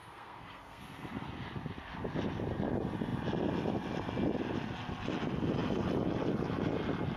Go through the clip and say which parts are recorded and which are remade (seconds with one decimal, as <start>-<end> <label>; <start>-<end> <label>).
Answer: 0.0-0.8 remade; 0.8-7.2 recorded